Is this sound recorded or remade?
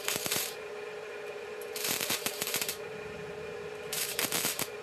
remade